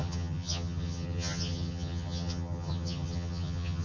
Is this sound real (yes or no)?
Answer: no